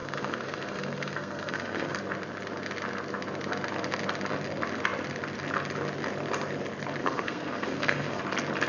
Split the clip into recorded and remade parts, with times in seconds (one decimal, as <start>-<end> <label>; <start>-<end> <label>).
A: 0.0-2.0 remade; 2.0-7.0 recorded; 7.0-8.2 remade; 8.2-8.7 recorded